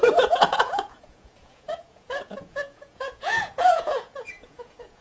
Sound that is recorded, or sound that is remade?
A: remade